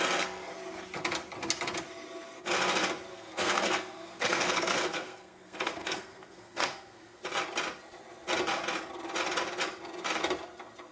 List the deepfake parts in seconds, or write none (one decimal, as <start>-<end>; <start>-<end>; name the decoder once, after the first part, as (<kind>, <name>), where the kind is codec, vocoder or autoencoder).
0.0-0.5 (codec, SNAC); 3.1-7.2

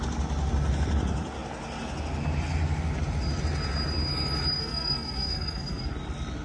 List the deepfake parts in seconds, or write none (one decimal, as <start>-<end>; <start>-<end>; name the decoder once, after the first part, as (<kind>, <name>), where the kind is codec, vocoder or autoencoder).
4.6-5.9 (codec, SNAC)

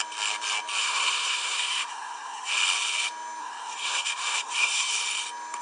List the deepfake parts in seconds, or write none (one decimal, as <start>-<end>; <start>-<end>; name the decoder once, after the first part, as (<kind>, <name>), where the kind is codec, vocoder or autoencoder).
0.8-2.5 (codec, SNAC); 3.4-4.9

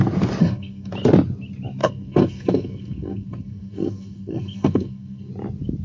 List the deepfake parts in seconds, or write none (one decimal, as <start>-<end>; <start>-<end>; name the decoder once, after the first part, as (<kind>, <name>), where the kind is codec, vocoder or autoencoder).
0.4-0.9 (codec, SNAC); 1.8-5.3

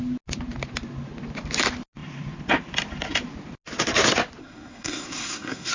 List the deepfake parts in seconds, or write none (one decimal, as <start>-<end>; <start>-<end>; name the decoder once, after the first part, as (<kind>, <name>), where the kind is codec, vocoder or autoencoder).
4.4-5.7 (codec, SNAC)

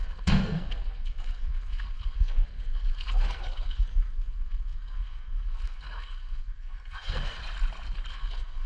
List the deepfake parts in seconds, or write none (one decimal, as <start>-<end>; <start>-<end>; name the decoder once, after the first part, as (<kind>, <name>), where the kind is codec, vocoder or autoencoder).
0.0-7.4 (codec, SNAC); 8.1-8.7

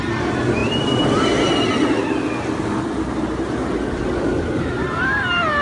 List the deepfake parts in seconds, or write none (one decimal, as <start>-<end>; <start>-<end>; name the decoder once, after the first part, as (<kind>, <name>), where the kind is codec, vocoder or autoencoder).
none

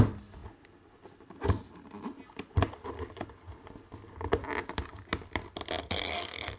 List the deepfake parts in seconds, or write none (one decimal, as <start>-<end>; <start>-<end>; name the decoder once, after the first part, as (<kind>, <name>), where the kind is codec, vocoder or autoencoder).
5.8-6.6 (codec, SNAC)